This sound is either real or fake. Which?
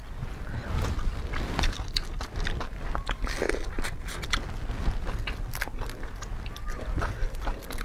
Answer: real